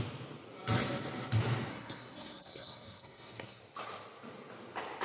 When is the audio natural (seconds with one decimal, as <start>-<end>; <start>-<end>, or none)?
0.0-1.7; 3.6-5.0